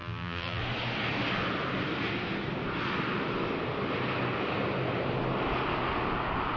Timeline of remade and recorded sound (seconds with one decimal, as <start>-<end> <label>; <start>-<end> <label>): 0.0-0.6 remade; 0.6-6.6 recorded